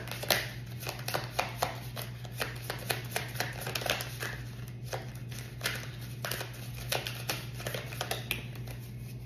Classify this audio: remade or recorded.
recorded